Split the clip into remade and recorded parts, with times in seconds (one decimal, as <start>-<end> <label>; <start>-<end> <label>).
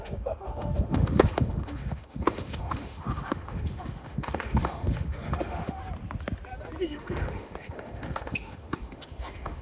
0.0-5.8 remade; 5.8-6.8 recorded; 6.8-9.6 remade